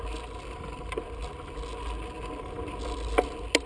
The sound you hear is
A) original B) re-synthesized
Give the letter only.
A